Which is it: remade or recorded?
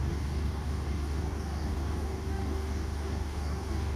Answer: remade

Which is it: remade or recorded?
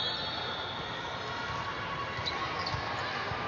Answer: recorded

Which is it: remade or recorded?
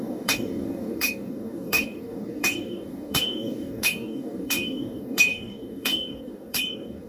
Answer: remade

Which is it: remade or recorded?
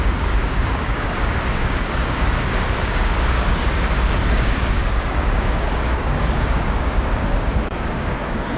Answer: remade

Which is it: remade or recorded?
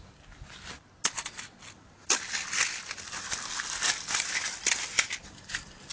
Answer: recorded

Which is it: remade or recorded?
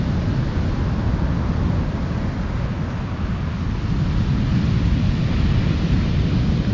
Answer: recorded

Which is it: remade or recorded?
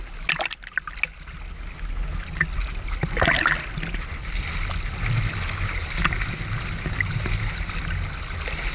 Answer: recorded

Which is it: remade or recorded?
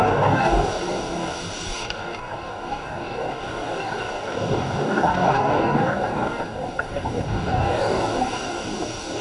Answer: remade